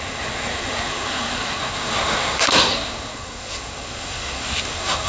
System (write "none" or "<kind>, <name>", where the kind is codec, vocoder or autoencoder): codec, SNAC